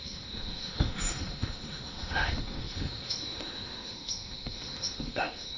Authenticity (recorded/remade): remade